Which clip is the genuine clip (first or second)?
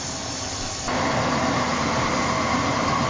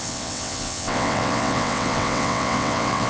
first